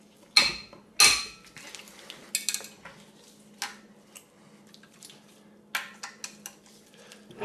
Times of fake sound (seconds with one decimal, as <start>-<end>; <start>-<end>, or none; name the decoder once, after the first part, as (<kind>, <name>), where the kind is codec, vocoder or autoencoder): none